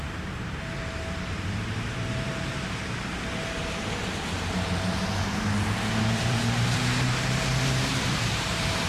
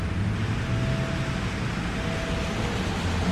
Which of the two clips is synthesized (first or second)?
first